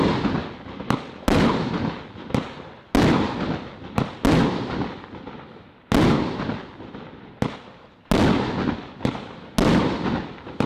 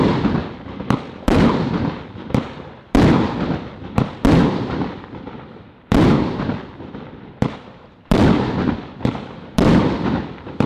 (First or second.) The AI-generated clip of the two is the second